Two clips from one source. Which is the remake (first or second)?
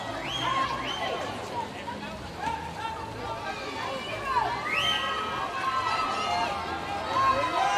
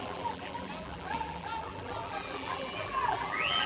second